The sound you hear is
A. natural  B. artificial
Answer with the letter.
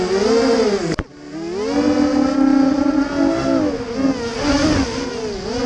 A